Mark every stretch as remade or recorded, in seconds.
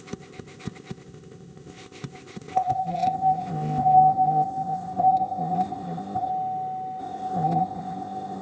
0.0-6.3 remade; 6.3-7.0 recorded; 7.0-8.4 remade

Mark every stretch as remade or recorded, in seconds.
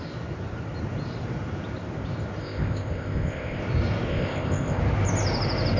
0.0-2.4 recorded; 2.4-3.6 remade; 3.6-4.1 recorded; 4.1-4.8 remade; 4.8-5.8 recorded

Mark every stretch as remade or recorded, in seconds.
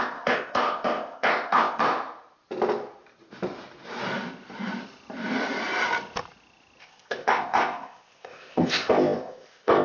0.0-1.8 remade; 1.8-6.8 recorded; 6.8-9.8 remade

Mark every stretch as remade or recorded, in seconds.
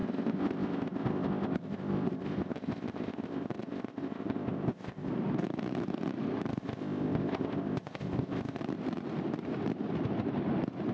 0.0-5.1 remade; 5.1-6.5 recorded; 6.5-8.6 remade; 8.6-10.9 recorded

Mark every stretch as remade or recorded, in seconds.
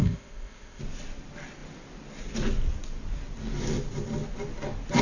0.0-0.8 remade; 0.8-5.0 recorded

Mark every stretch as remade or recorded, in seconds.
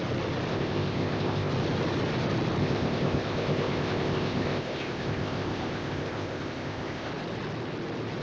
0.0-0.5 recorded; 0.5-1.5 remade; 1.5-2.6 recorded; 2.6-7.1 remade; 7.1-8.2 recorded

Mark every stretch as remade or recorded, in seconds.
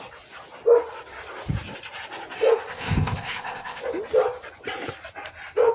0.0-2.7 recorded; 2.7-3.8 remade; 3.8-5.7 recorded